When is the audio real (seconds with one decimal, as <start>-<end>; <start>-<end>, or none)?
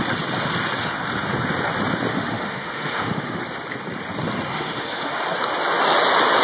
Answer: 0.0-2.1; 3.4-4.5; 5.2-6.4